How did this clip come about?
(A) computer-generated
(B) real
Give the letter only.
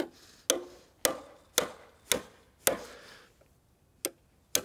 B